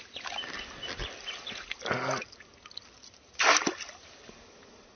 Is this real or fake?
real